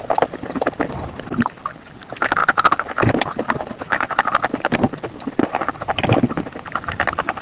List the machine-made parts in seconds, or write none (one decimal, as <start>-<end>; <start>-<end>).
none